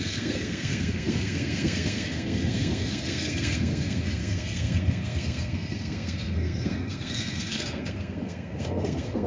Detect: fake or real fake